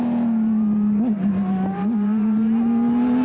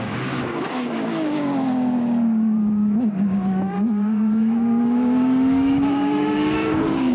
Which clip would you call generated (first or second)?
second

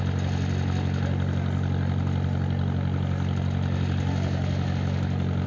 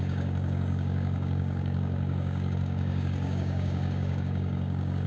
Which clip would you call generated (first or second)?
second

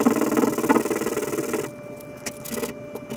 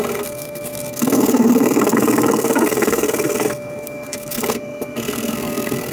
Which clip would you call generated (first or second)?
second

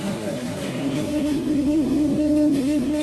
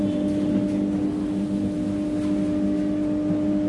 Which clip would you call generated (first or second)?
first